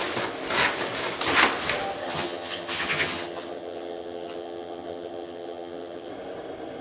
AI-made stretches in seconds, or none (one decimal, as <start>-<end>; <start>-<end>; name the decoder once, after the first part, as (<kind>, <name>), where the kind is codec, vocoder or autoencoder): 2.0-6.1 (vocoder, HiFi-GAN)